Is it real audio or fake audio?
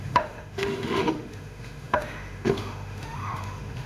fake